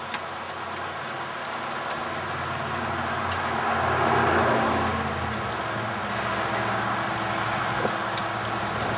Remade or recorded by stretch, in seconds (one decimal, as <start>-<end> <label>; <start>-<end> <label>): 0.0-9.0 recorded